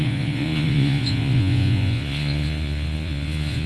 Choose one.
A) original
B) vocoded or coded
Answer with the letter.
B